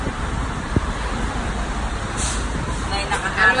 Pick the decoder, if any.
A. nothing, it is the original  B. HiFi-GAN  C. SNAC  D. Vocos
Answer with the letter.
A